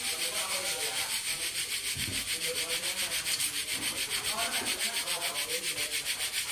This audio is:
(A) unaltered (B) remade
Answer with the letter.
B